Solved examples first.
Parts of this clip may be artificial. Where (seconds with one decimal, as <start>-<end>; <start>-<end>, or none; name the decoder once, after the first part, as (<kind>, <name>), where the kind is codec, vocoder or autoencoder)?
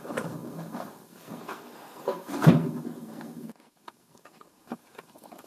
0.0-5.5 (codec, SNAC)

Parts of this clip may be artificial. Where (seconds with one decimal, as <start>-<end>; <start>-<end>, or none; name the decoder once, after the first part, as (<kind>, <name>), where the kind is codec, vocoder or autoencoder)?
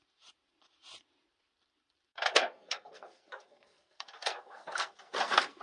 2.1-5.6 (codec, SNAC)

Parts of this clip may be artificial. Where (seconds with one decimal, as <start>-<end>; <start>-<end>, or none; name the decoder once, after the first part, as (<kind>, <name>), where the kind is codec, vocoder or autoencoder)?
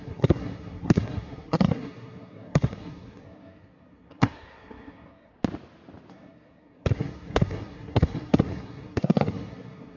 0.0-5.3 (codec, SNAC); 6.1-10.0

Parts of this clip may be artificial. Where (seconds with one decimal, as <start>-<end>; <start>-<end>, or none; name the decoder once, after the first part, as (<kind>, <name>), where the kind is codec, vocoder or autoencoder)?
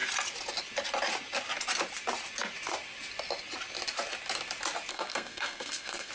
4.9-6.1 (codec, SNAC)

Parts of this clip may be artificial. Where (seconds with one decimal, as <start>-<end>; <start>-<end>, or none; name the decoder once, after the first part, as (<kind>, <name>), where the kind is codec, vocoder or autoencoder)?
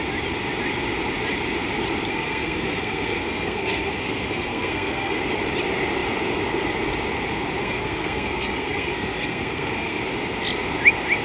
2.1-5.2 (codec, SNAC); 7.6-10.0